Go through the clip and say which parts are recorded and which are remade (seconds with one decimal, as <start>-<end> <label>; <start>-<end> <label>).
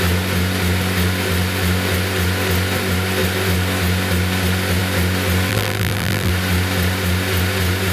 0.0-5.5 recorded; 5.5-6.3 remade; 6.3-7.9 recorded